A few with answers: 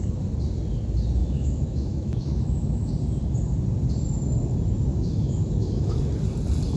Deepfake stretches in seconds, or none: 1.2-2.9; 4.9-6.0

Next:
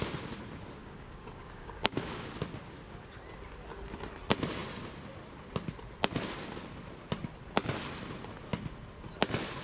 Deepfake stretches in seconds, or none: 0.8-2.3

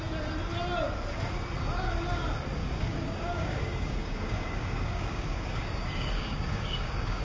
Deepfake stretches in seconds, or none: 2.6-7.2

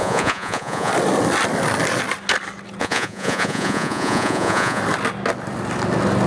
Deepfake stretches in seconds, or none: 0.0-0.9; 2.8-4.8

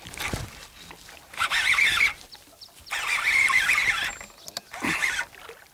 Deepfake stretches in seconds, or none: none

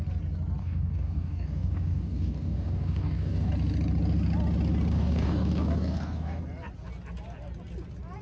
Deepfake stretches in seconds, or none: 0.6-3.5; 4.9-6.4

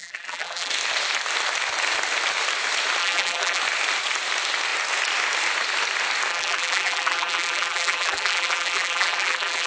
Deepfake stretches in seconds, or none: 0.0-0.7; 3.0-3.6; 6.3-9.7

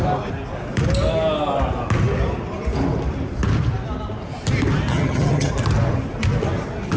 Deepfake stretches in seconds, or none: 4.9-5.5